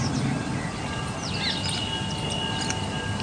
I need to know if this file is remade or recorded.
recorded